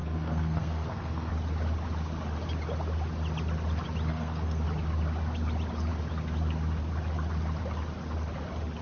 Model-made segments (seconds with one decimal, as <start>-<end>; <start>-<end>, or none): 0.0-1.3; 4.1-4.6